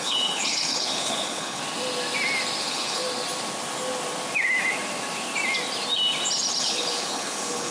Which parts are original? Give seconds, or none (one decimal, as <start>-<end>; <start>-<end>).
1.6-2.6; 3.0-6.6